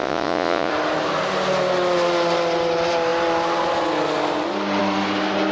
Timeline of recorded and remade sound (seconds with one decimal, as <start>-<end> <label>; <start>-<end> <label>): 0.0-0.7 remade; 0.7-5.5 recorded